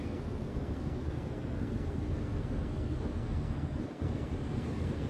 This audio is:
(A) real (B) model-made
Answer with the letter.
B